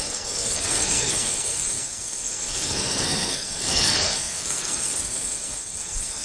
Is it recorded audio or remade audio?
remade